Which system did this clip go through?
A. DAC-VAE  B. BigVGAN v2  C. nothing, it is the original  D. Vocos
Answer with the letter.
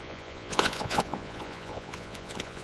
D